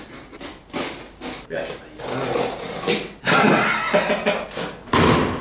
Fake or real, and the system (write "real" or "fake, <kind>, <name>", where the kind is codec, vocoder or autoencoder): real